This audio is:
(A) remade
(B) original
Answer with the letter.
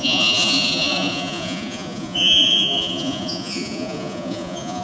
A